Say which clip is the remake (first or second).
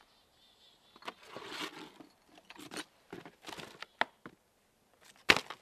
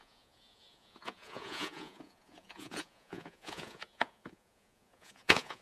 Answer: second